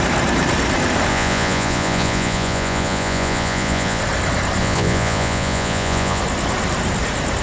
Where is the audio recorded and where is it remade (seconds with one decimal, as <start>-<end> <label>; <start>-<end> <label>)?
0.0-1.1 recorded; 1.1-4.0 remade; 4.0-4.6 recorded; 4.6-6.2 remade; 6.2-7.4 recorded